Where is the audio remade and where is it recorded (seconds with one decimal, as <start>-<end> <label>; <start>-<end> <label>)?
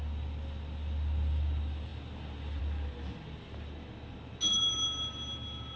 0.0-5.8 recorded